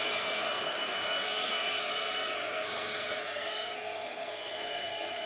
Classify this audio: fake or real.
fake